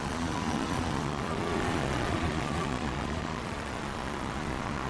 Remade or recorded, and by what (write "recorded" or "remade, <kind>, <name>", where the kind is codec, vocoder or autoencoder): remade, vocoder, Vocos